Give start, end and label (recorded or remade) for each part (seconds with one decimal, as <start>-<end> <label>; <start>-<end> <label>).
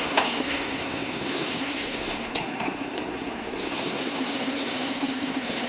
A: 0.0-5.7 remade